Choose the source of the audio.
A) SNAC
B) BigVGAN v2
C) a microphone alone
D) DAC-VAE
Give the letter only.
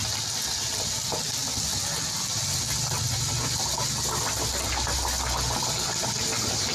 C